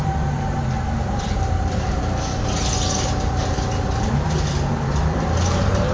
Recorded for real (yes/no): no